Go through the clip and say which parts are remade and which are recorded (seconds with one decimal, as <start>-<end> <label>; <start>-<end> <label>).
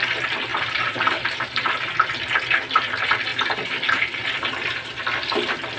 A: 0.0-0.5 recorded; 0.5-1.7 remade; 1.7-3.3 recorded; 3.3-5.0 remade; 5.0-5.8 recorded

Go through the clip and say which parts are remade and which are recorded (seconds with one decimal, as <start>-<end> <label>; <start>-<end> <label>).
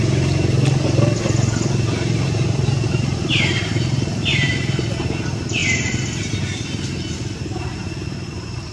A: 0.0-3.2 recorded; 3.2-4.5 remade; 4.5-5.6 recorded; 5.6-6.3 remade; 6.3-8.7 recorded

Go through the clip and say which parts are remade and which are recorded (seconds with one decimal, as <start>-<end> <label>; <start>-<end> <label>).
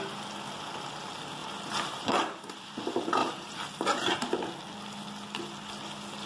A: 0.0-1.4 recorded; 1.4-2.6 remade; 2.6-3.2 recorded; 3.2-4.4 remade; 4.4-6.3 recorded